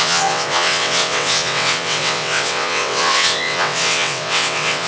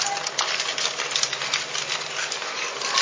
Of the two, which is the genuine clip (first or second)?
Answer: second